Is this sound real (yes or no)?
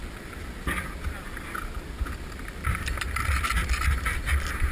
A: yes